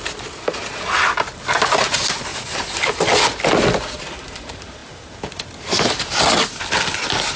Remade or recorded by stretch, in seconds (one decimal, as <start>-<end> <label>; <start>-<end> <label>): 0.0-7.4 recorded

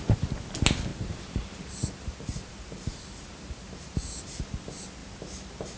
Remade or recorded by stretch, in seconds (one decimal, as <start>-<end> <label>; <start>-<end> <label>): 0.0-0.9 recorded; 0.9-4.4 remade; 4.4-5.8 recorded